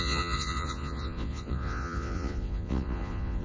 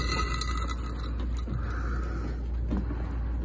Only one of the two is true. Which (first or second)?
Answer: second